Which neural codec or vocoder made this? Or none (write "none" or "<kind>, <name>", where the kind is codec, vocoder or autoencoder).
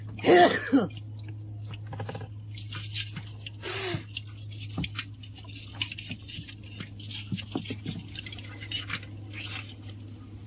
none